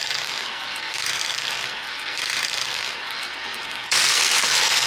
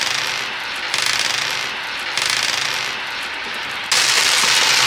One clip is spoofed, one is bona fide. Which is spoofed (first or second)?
first